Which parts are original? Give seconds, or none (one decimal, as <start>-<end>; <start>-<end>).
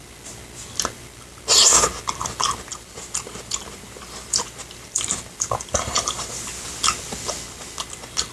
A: 0.0-2.7; 6.3-8.3